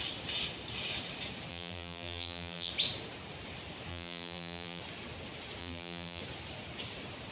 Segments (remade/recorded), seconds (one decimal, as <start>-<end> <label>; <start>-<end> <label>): 0.0-1.5 recorded; 1.5-2.7 remade; 2.7-3.9 recorded; 3.9-4.8 remade; 4.8-5.6 recorded; 5.6-6.2 remade; 6.2-7.3 recorded

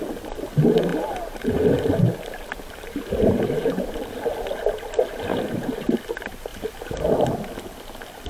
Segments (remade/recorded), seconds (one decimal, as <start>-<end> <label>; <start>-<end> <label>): 0.0-0.9 recorded; 0.9-4.3 remade; 4.3-5.3 recorded; 5.3-6.0 remade; 6.0-8.3 recorded

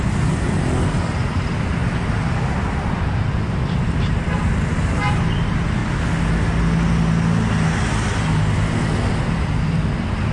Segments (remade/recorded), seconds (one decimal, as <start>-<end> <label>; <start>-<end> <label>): 0.0-5.8 remade; 5.8-9.2 recorded; 9.2-10.3 remade

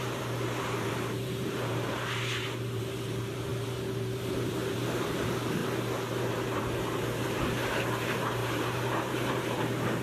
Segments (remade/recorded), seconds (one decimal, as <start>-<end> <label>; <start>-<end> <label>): 0.0-5.6 remade; 5.6-6.3 recorded; 6.3-10.0 remade